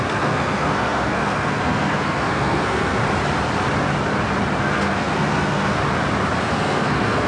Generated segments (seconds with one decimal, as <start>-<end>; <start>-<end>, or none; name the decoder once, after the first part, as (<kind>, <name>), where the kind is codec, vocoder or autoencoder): 0.0-3.0 (codec, SNAC); 4.6-5.8; 6.4-7.3